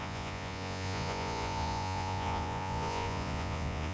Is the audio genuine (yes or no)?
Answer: no